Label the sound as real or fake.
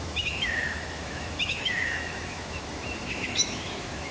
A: fake